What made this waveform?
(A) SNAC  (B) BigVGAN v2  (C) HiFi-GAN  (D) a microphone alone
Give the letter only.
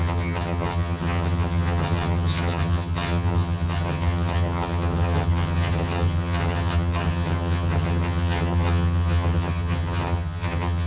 C